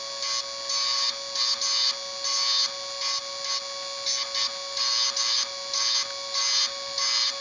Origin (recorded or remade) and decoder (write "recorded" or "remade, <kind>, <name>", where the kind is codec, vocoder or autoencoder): recorded